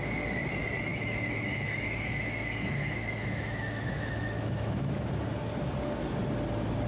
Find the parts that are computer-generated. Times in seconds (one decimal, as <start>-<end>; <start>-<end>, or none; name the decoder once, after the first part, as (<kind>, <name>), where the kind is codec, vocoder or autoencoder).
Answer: 0.9-5.0 (autoencoder, DAC-VAE)